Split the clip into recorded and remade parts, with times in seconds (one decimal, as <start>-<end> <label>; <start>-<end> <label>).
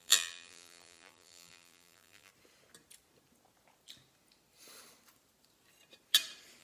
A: 0.0-2.3 remade; 2.3-6.6 recorded